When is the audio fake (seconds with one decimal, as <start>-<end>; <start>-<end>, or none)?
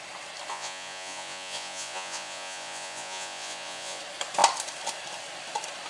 0.5-4.0